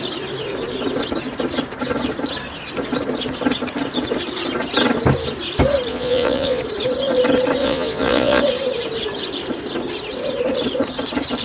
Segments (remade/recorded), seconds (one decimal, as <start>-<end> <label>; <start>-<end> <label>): 0.0-5.9 recorded; 5.9-6.6 remade; 6.6-7.6 recorded; 7.6-8.4 remade; 8.4-11.4 recorded